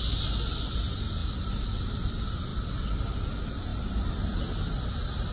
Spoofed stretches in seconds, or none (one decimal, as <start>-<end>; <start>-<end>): none